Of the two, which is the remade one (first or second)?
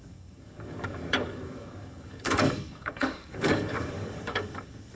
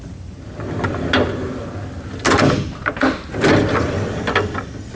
first